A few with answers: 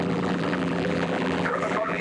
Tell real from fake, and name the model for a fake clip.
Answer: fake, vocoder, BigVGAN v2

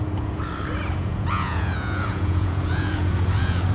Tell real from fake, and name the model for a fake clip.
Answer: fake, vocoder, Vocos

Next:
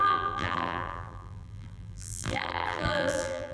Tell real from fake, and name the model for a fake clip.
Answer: fake, vocoder, BigVGAN v2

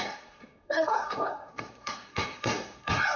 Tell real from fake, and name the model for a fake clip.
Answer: fake, codec, SNAC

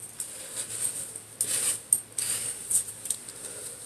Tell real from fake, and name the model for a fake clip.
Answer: real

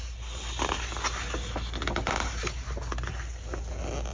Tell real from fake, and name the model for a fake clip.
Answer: real